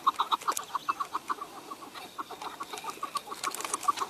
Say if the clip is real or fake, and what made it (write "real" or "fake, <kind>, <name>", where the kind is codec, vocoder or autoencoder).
real